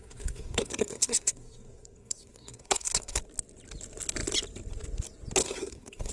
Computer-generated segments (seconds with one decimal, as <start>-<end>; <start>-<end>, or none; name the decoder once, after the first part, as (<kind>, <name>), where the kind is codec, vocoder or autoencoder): 0.0-3.2 (codec, SNAC); 5.4-6.1